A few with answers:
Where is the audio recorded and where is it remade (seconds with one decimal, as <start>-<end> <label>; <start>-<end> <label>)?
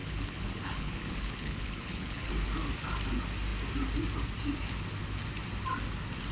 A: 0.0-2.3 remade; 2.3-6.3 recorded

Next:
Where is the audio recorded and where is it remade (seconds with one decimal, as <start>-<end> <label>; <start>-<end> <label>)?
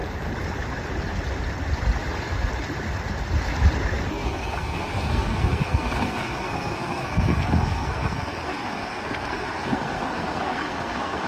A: 0.0-4.1 recorded; 4.1-11.3 remade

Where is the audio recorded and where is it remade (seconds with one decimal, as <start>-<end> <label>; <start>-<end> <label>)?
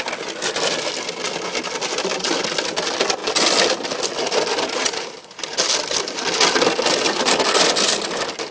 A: 0.0-3.2 recorded; 3.2-6.3 remade; 6.3-8.5 recorded